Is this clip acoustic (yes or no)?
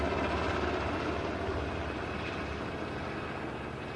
yes